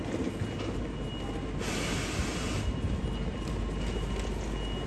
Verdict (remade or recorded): recorded